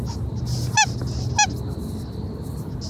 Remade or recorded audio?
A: recorded